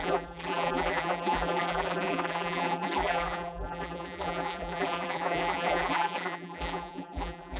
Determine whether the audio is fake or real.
fake